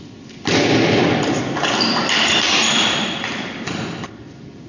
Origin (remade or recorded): recorded